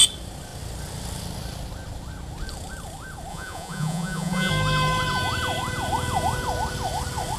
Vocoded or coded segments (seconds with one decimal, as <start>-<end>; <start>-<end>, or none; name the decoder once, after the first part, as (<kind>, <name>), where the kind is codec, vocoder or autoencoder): 3.3-4.5 (vocoder, Vocos)